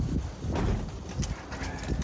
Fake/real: real